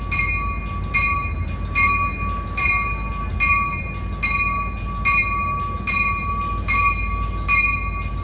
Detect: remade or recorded recorded